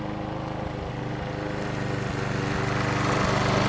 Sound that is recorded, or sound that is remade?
recorded